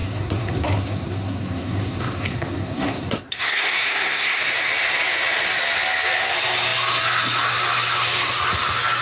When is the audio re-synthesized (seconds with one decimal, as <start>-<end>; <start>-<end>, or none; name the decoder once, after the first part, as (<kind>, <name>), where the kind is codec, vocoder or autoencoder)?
0.0-4.4 (codec, SNAC)